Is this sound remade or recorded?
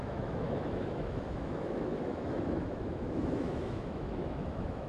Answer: remade